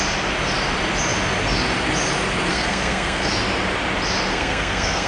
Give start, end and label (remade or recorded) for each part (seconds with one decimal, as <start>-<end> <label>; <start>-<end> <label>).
0.0-2.5 recorded; 2.5-3.3 remade; 3.3-4.3 recorded; 4.3-5.1 remade